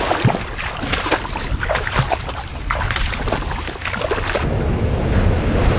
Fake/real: real